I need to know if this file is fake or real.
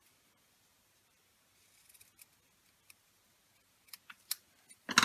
real